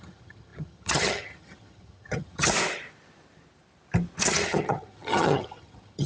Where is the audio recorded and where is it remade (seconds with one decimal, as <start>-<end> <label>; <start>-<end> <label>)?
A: 0.0-2.5 remade; 2.5-4.3 recorded; 4.3-6.1 remade